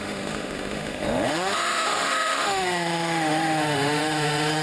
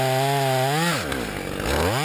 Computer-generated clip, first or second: first